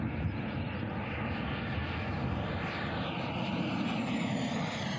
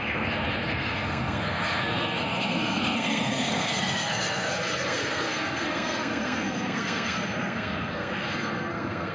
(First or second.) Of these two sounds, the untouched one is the first